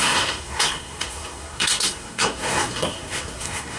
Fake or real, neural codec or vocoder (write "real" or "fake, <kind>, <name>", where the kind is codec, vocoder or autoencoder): fake, codec, SNAC